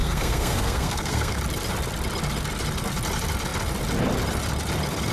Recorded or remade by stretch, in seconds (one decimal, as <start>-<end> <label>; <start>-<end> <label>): 0.0-1.4 remade; 1.4-5.1 recorded